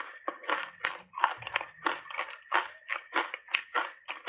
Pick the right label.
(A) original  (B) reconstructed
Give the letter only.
A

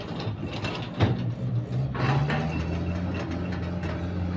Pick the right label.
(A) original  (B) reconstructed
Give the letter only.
A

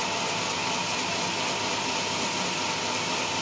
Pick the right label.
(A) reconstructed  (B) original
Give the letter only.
B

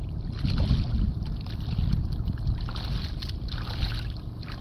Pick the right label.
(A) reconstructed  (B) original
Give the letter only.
B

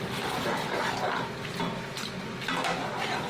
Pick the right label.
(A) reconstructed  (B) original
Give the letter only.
B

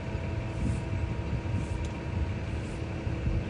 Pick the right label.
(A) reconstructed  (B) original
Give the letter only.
B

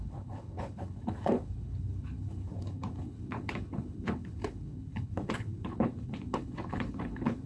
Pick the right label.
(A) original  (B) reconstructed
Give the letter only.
B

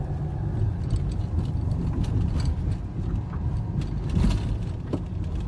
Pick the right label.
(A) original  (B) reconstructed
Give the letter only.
A